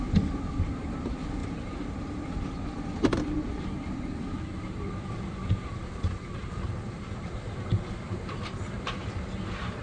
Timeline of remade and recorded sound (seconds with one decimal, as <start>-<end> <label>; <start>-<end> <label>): 0.0-1.4 remade; 1.4-2.0 recorded; 2.0-9.8 remade